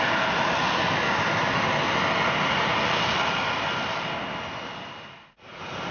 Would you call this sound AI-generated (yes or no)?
no